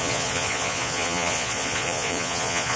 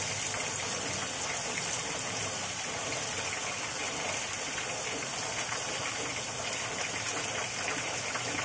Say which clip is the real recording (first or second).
second